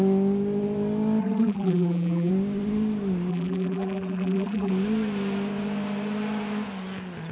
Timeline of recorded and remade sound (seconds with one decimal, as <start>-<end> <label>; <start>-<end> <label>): 0.0-1.2 recorded; 1.2-2.3 remade; 2.3-3.3 recorded; 3.3-4.7 remade; 4.7-7.3 recorded